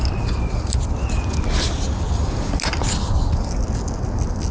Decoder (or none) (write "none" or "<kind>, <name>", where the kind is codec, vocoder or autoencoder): none